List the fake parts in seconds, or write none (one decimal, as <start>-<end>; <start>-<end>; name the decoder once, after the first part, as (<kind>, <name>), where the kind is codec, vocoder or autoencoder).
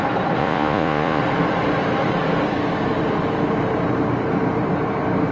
0.4-1.2 (vocoder, Vocos)